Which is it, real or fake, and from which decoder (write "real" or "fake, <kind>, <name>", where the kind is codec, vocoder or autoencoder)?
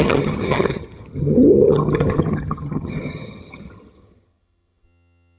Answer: fake, vocoder, HiFi-GAN